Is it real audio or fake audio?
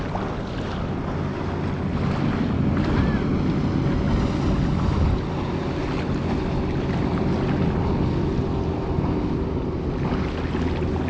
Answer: real